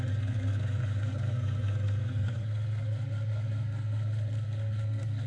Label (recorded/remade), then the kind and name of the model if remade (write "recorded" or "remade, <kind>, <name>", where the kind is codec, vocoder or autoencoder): remade, codec, SNAC